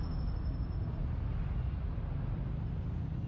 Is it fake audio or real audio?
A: real